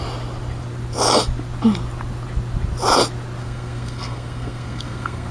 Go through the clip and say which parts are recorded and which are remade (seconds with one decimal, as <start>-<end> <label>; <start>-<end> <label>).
0.0-3.4 recorded; 3.4-5.3 remade